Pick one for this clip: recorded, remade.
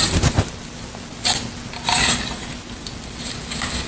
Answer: recorded